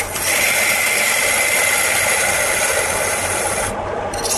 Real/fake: real